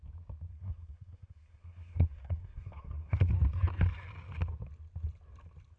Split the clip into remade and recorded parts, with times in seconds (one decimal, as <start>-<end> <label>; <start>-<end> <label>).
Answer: 0.0-0.5 recorded; 0.5-3.3 remade; 3.3-5.8 recorded